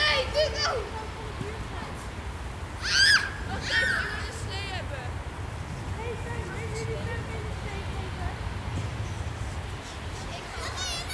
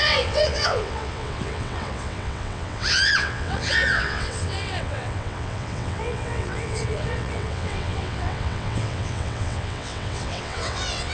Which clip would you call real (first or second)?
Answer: first